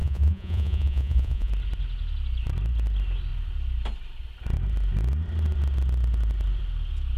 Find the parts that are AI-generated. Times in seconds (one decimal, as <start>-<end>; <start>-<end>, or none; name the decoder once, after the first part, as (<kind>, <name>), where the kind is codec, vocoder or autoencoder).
0.0-1.5 (vocoder, Vocos)